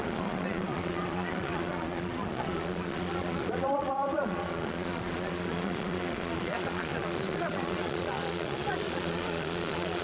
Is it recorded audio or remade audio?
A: remade